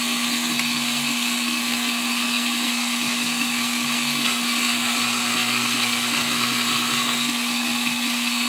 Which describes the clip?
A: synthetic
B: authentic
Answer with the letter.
A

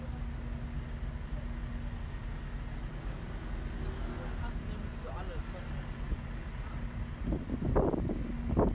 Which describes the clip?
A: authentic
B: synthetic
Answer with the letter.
A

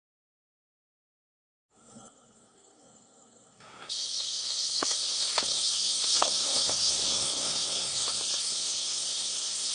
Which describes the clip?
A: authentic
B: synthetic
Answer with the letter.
B